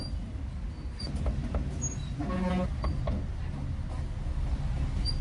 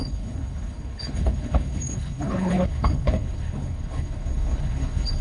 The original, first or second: first